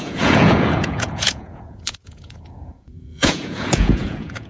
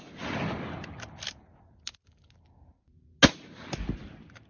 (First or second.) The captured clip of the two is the second